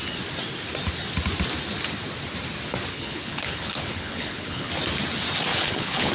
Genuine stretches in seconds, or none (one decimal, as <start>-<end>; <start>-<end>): 0.0-2.9; 4.7-5.5